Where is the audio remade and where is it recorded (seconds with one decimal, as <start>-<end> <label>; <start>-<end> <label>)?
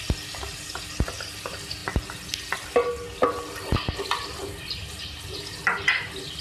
0.0-6.4 recorded